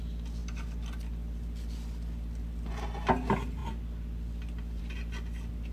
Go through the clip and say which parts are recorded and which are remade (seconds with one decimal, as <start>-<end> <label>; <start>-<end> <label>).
0.0-3.6 remade; 3.6-4.8 recorded; 4.8-5.7 remade